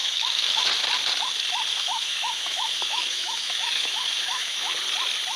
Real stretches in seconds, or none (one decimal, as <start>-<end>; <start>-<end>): 0.7-1.7; 4.7-5.4